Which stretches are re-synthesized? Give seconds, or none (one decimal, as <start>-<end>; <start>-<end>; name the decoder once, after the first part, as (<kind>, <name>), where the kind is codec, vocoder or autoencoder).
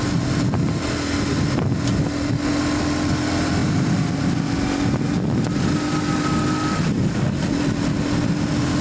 none